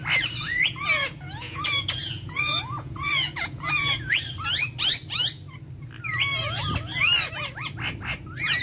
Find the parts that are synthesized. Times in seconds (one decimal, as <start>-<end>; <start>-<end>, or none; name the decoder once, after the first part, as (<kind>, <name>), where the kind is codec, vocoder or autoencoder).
0.4-4.2 (vocoder, Vocos)